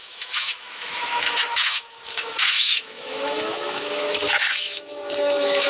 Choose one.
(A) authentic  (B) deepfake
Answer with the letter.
B